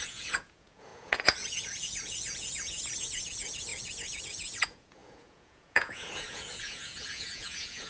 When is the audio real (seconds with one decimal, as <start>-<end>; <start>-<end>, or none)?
none